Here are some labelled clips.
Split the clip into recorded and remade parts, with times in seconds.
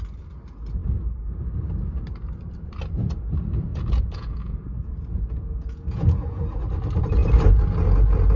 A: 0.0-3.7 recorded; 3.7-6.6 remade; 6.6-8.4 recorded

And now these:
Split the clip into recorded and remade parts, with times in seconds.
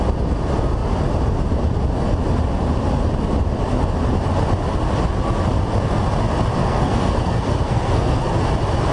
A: 0.0-6.6 recorded; 6.6-8.3 remade; 8.3-8.9 recorded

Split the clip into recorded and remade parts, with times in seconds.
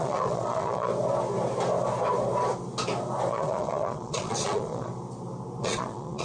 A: 0.0-0.9 remade; 0.9-3.3 recorded; 3.3-4.9 remade; 4.9-5.6 recorded; 5.6-6.2 remade